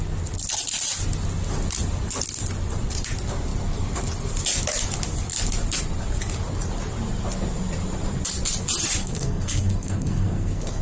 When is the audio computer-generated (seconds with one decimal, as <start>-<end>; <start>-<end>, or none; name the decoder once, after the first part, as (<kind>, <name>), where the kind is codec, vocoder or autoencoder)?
9.0-10.8 (codec, SNAC)